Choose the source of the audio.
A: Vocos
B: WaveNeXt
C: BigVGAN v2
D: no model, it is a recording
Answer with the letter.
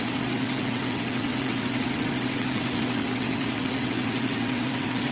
B